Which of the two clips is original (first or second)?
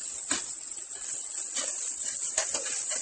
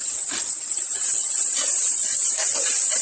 first